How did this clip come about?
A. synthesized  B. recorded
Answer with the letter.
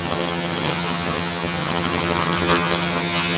A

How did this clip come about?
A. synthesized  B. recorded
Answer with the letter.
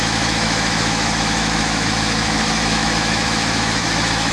A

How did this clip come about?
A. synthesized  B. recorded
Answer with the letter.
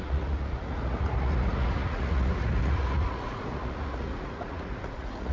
A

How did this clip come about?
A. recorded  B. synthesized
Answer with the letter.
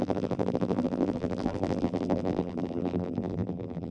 B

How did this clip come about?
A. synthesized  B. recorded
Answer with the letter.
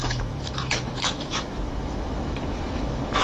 A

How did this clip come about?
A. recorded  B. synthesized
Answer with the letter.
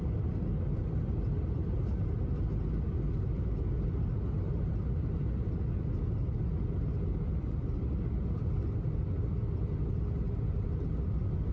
A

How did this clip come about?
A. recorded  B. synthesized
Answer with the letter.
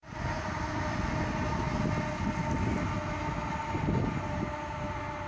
A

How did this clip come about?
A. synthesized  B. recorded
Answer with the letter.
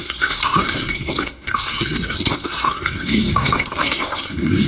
A